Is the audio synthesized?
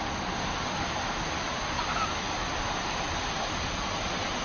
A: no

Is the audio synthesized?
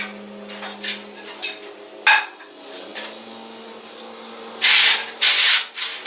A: no